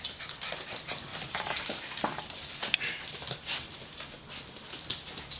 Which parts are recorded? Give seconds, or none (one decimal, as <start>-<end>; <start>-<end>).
0.0-5.4